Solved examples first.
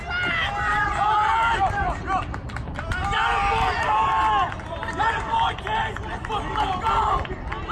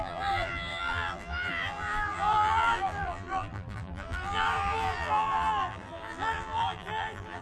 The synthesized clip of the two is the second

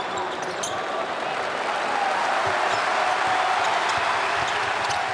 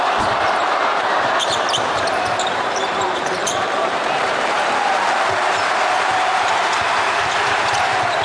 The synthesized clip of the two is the second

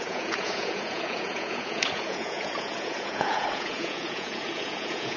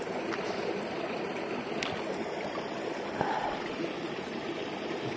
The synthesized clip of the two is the first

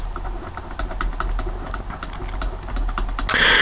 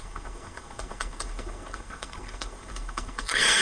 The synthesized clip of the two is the second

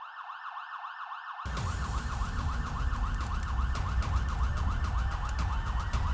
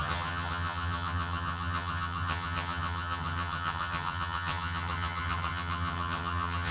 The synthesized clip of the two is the second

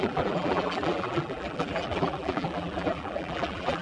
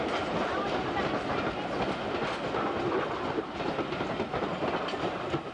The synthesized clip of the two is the first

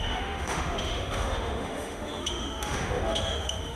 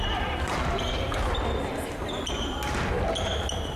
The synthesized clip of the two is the first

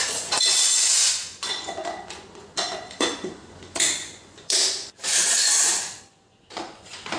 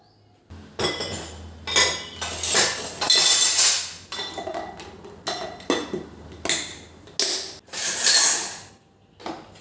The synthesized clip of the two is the first